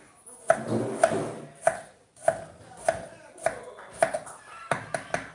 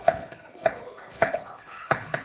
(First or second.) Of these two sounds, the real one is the first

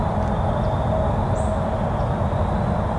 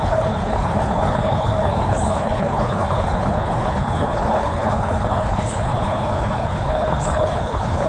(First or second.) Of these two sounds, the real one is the first